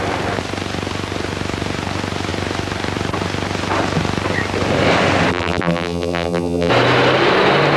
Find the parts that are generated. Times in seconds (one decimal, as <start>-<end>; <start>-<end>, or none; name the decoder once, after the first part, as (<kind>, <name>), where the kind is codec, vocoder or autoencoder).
5.3-6.7 (vocoder, BigVGAN v2)